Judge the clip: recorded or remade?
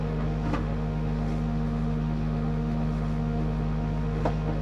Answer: remade